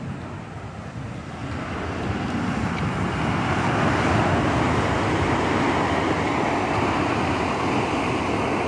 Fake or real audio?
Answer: real